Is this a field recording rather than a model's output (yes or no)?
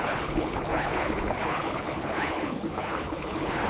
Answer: no